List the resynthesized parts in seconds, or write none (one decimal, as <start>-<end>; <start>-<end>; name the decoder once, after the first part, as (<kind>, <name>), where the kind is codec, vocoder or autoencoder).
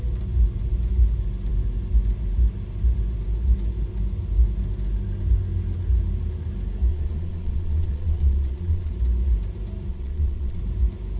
6.9-8.9 (vocoder, Vocos); 9.9-10.6